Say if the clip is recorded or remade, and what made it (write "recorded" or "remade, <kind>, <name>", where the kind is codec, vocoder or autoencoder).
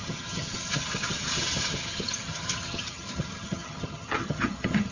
remade, vocoder, HiFi-GAN